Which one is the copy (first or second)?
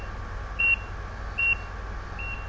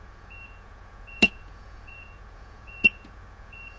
second